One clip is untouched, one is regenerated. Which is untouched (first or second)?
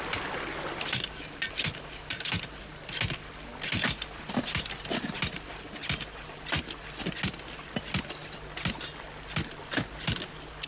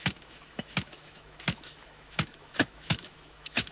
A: first